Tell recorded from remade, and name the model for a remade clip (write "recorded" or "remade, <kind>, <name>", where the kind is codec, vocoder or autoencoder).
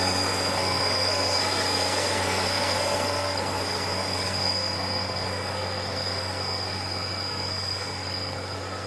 remade, codec, SNAC